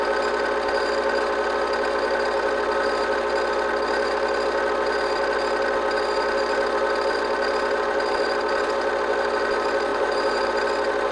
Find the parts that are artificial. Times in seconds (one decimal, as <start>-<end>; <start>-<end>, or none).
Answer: 9.9-10.5